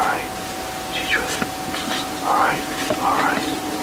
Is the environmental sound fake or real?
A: real